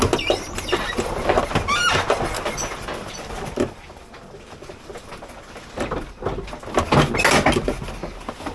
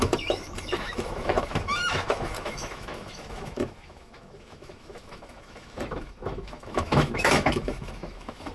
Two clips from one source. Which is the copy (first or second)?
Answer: second